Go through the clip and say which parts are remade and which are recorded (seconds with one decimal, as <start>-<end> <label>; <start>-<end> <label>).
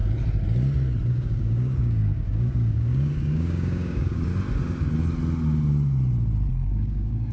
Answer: 0.0-1.1 recorded; 1.1-4.3 remade; 4.3-6.5 recorded; 6.5-7.3 remade